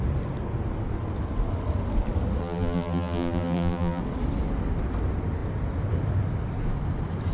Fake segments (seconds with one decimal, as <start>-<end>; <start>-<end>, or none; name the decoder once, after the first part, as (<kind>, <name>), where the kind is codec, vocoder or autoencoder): 2.4-4.0 (vocoder, BigVGAN v2)